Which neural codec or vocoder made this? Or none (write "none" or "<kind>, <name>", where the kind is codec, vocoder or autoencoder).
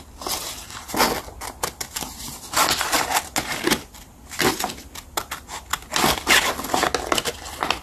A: none